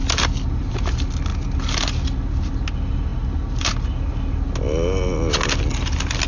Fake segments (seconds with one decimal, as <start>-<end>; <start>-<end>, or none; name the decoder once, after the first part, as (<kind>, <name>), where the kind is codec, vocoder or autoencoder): none